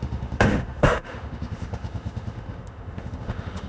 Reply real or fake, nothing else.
fake